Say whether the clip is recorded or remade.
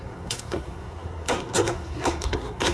remade